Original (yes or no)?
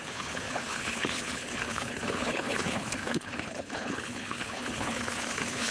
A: no